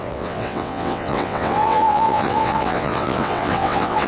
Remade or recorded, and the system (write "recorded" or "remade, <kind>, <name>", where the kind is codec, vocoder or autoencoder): remade, vocoder, WaveNeXt